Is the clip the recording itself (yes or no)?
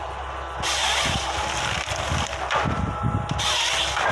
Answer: yes